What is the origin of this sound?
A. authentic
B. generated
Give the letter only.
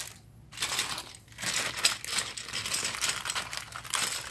A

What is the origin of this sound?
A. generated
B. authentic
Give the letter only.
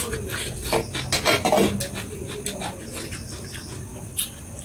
B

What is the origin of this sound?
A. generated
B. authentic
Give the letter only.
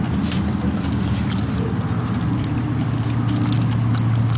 B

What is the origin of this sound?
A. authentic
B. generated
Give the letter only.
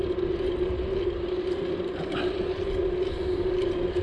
A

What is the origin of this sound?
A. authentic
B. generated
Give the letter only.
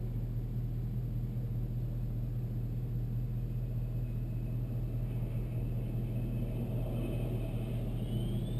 A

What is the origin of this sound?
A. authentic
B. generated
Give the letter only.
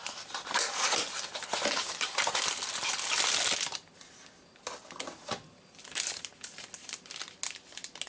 A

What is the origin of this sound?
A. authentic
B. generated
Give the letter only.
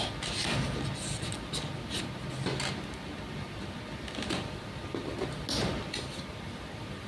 A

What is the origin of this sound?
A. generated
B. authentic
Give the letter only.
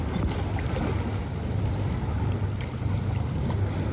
B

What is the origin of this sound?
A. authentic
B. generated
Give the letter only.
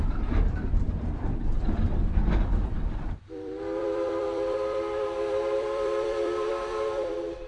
B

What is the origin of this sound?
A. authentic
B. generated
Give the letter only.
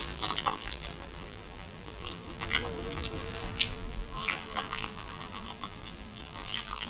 B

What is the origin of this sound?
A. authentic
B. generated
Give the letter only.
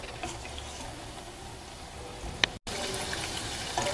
A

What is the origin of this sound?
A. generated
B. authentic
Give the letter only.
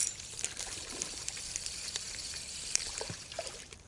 A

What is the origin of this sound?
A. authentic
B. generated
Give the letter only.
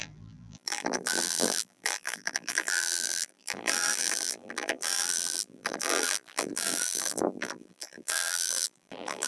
B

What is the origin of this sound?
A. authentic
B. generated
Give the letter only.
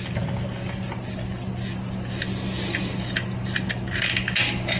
A